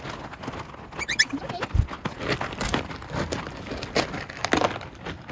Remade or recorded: recorded